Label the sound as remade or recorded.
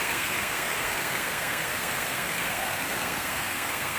remade